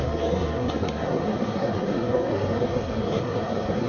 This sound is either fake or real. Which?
fake